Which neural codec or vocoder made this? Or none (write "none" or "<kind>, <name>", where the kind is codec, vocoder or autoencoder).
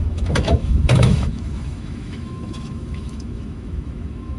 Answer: autoencoder, DAC-VAE